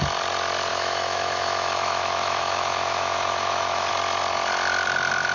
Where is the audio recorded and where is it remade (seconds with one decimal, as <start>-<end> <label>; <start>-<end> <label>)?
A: 0.0-0.7 recorded; 0.7-3.9 remade; 3.9-5.3 recorded